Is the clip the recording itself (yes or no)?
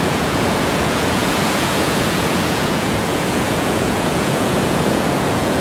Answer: no